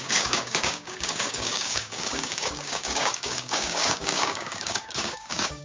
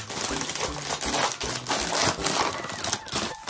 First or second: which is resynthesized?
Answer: first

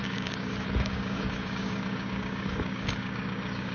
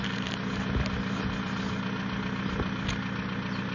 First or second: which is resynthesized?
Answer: first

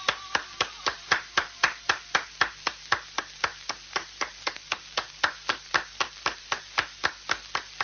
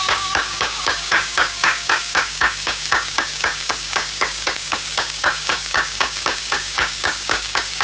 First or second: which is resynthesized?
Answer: second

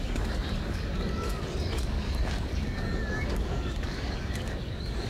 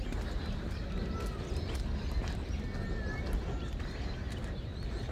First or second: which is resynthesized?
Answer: first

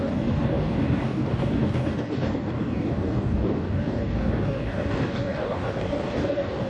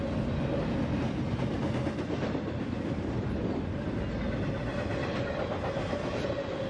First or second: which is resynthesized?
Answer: first